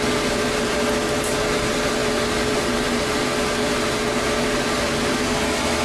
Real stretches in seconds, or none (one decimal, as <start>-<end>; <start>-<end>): 0.0-5.8